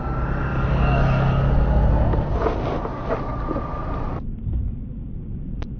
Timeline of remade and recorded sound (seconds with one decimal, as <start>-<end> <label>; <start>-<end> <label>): 0.0-3.8 recorded; 3.8-4.8 remade; 4.8-5.8 recorded